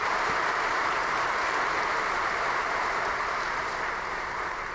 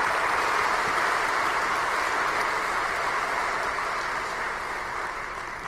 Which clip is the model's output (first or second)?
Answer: first